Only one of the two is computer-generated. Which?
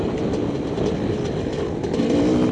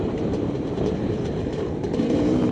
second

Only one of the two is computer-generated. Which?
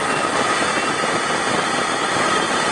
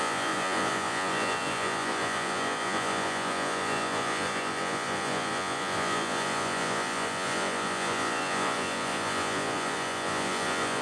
second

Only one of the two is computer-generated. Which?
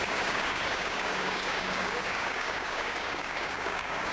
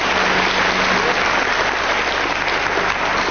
first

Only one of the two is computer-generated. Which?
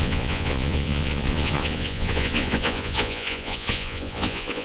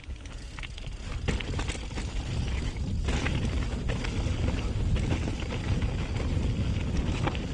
first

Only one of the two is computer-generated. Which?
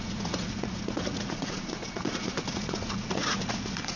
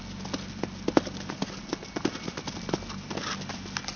first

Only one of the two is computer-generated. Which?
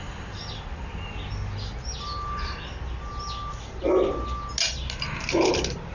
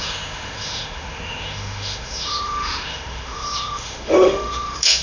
second